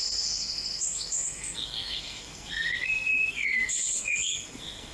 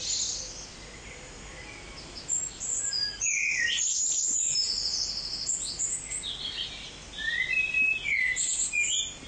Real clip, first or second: second